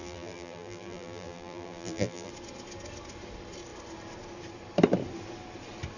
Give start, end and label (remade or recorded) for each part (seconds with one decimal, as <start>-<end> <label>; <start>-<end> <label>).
0.0-2.3 remade; 2.3-6.0 recorded